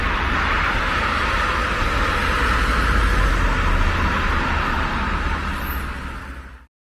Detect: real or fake real